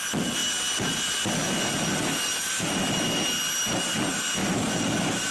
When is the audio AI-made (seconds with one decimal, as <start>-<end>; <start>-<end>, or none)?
4.4-5.3